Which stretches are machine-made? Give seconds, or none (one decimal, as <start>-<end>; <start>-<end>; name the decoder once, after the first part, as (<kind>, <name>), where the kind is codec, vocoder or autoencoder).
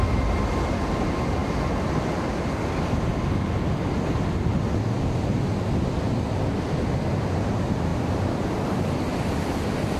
7.9-10.0 (vocoder, BigVGAN v2)